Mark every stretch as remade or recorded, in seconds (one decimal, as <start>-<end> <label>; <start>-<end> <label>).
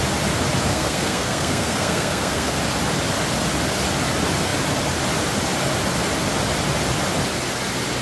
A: 0.0-0.7 recorded; 0.7-2.6 remade; 2.6-8.0 recorded